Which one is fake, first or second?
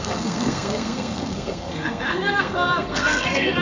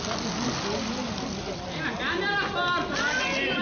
first